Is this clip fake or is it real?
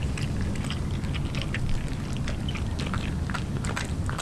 real